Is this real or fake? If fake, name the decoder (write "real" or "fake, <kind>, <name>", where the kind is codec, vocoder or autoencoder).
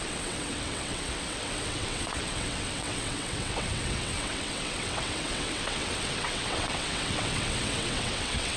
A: fake, vocoder, WaveNeXt